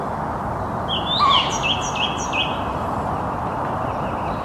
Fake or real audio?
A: real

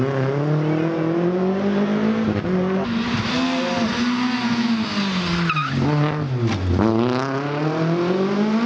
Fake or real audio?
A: real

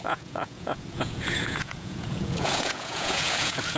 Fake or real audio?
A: fake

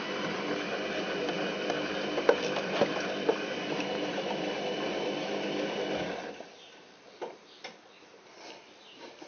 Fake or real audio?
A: real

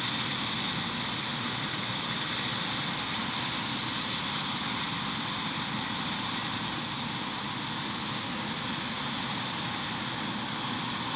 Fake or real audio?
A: real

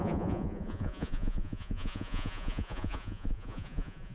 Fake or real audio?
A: fake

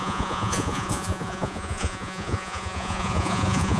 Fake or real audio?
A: fake